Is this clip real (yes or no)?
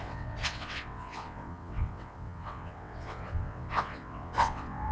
no